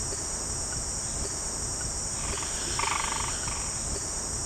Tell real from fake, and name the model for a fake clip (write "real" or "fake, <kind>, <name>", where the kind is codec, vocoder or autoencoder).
real